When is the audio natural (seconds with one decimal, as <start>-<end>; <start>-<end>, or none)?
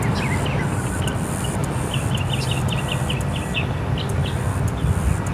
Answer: 4.2-5.3